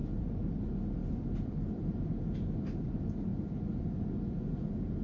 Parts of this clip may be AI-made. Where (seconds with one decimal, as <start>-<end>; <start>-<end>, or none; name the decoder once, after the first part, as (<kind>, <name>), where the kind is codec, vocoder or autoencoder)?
0.0-0.6 (vocoder, BigVGAN v2); 1.0-1.8